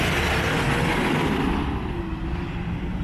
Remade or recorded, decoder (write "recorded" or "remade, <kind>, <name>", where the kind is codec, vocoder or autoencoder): recorded